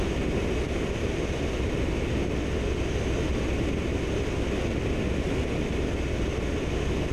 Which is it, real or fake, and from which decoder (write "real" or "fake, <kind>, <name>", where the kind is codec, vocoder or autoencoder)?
real